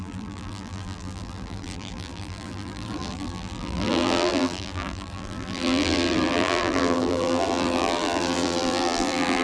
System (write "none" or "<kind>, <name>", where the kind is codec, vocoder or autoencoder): vocoder, BigVGAN v2